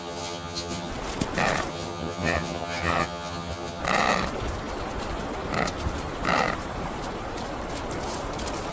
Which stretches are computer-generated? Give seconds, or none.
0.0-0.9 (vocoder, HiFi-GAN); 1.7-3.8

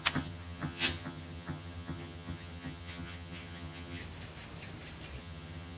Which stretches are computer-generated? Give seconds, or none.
0.0-4.0 (vocoder, HiFi-GAN); 5.2-5.8

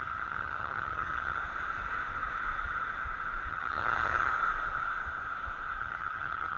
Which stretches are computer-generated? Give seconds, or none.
0.0-1.4 (vocoder, HiFi-GAN); 3.5-4.3; 5.8-6.6